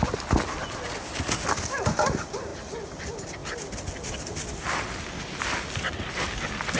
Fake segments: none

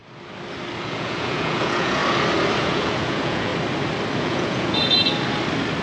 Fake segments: 0.8-2.0 (vocoder, Vocos); 2.6-3.5; 4.2-5.1

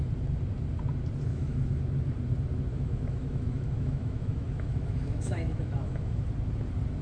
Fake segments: 1.3-1.8 (autoencoder, DAC-VAE); 2.7-6.3

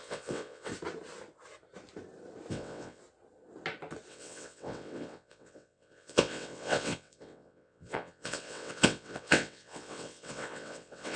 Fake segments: 0.0-0.7 (vocoder, WaveNeXt); 2.5-3.0; 4.1-11.2

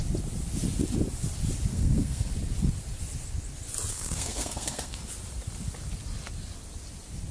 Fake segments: 1.7-2.3 (codec, SNAC); 3.9-5.0